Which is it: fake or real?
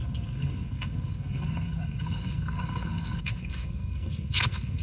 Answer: fake